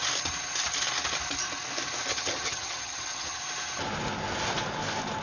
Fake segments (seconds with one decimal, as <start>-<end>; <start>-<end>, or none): 2.1-3.4